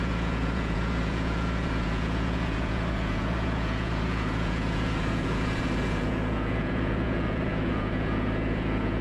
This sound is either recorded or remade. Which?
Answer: remade